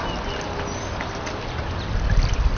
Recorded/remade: recorded